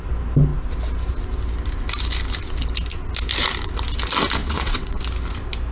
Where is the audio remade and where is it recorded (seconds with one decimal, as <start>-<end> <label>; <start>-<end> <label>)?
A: 0.0-4.4 recorded; 4.4-5.0 remade; 5.0-5.7 recorded